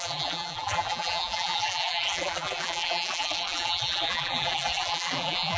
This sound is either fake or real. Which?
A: fake